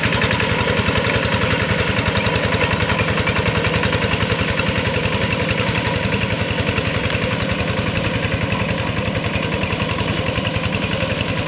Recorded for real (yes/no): yes